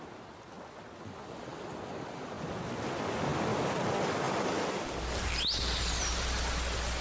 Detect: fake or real real